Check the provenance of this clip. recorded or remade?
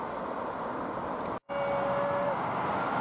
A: recorded